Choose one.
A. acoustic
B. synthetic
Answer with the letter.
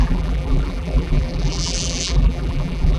B